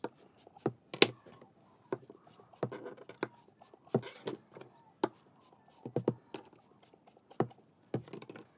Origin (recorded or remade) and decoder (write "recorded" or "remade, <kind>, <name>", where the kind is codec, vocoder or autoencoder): recorded